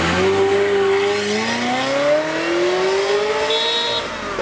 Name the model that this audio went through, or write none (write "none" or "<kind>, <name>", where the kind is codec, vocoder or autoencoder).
none